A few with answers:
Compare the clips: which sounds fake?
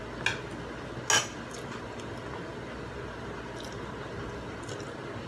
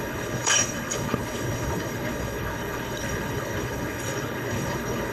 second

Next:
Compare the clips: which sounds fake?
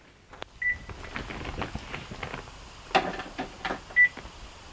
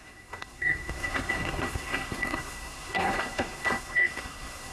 second